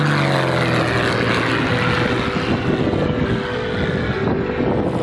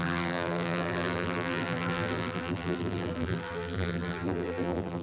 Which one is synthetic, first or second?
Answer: second